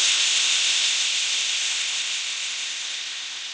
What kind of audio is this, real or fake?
fake